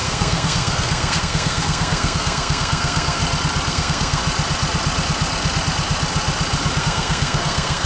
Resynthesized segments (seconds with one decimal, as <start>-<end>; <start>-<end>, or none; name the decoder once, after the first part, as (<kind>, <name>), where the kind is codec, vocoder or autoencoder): 0.0-3.2 (codec, SNAC); 3.7-4.2; 6.8-7.9